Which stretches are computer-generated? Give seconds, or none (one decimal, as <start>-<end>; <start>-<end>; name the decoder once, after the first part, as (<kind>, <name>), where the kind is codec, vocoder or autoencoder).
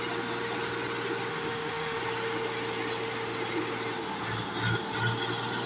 1.3-2.0 (autoencoder, DAC-VAE)